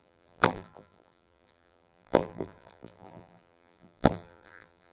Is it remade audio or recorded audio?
remade